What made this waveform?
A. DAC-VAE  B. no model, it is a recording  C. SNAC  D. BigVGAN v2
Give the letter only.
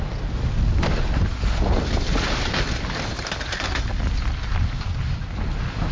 B